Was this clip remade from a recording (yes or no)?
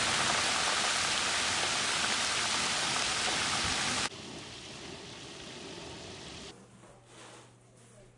no